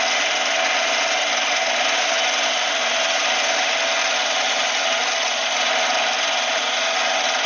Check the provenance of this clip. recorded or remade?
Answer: recorded